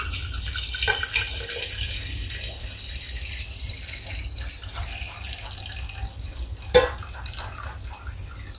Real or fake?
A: real